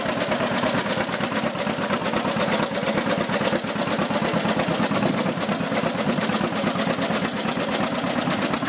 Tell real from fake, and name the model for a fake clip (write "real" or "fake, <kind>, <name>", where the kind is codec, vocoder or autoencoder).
real